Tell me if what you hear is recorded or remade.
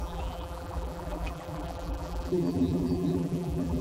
remade